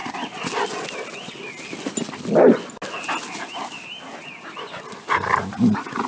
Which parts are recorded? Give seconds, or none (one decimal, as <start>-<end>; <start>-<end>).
0.0-6.1